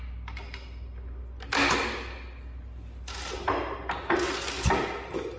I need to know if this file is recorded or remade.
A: recorded